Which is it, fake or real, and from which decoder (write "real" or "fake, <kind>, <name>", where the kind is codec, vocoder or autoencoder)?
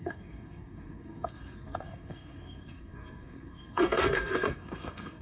fake, codec, SNAC